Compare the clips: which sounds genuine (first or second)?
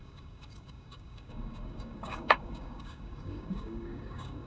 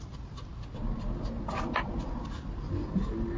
second